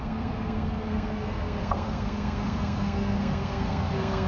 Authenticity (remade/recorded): remade